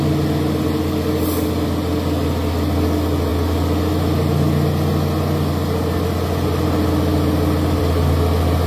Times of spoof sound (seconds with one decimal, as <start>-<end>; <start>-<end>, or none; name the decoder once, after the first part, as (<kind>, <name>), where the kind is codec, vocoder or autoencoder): none